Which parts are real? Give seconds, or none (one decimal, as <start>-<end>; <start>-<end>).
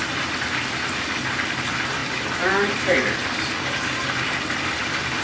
0.0-5.2